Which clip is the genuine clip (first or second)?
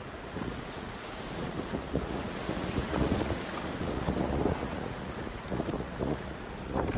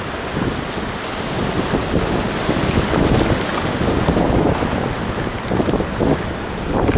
second